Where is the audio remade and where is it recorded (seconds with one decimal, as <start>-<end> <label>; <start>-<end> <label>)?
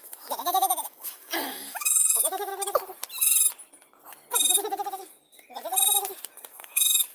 0.0-2.5 remade; 2.5-6.5 recorded; 6.5-7.1 remade